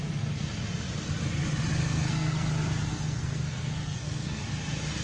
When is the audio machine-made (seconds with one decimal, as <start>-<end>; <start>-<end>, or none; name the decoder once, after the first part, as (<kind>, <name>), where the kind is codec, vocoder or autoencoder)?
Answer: 1.8-2.5 (codec, SNAC); 2.9-4.4